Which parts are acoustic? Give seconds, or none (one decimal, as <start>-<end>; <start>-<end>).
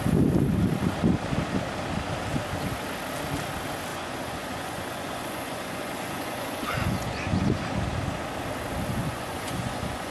0.0-3.9; 7.4-9.0